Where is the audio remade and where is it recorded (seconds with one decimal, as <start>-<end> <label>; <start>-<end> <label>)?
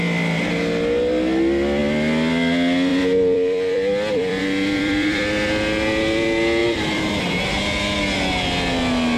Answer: 0.0-2.9 recorded; 2.9-5.2 remade; 5.2-6.6 recorded; 6.6-7.6 remade; 7.6-9.2 recorded